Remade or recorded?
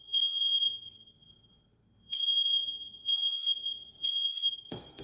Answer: remade